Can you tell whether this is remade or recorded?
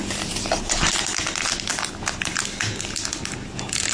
recorded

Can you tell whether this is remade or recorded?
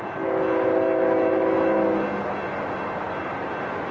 recorded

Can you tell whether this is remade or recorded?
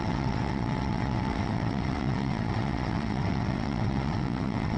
remade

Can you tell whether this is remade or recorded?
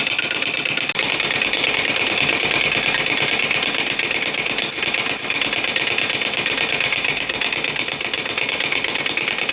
recorded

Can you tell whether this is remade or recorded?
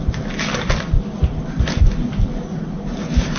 recorded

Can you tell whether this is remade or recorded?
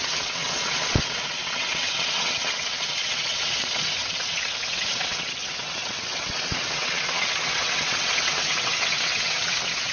remade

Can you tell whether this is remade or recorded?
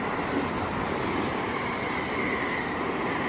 recorded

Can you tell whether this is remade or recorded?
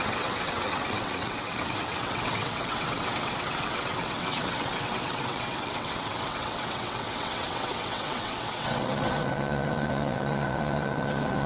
remade